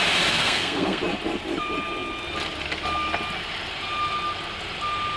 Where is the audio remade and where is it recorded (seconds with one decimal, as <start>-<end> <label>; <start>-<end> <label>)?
0.0-0.4 recorded; 0.4-1.0 remade; 1.0-5.2 recorded